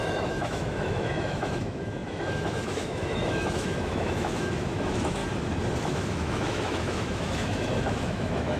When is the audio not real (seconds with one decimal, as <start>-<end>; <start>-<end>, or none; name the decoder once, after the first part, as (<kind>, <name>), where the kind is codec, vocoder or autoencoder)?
0.0-5.2 (autoencoder, DAC-VAE); 5.8-8.6